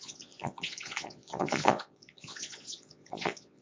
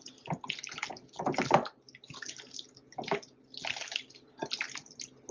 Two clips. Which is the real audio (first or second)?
second